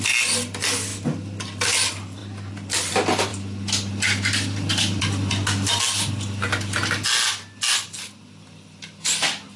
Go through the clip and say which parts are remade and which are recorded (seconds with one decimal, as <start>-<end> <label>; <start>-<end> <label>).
0.0-9.6 recorded